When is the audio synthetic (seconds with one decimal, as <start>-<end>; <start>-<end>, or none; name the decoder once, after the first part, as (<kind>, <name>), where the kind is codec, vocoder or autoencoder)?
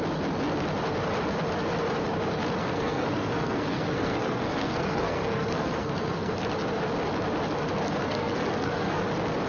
2.6-6.3 (codec, SNAC); 8.0-9.0